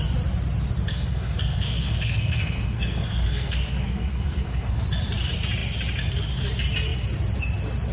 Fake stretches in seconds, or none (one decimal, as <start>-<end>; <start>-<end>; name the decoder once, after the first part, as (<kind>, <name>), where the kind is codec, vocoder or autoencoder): 0.9-4.8 (codec, SNAC)